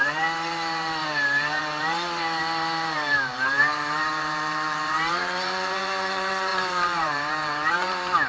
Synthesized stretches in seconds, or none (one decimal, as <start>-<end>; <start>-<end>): 0.0-8.3